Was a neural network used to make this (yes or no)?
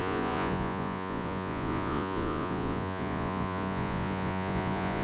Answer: yes